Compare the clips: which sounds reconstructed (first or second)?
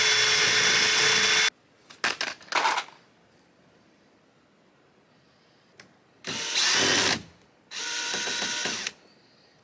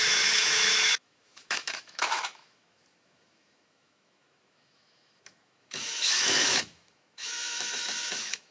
second